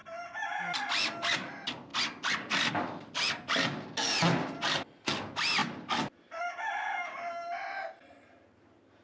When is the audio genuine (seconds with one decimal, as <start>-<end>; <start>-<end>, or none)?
0.0-9.0